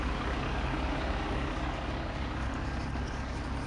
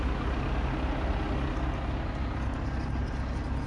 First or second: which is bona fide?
second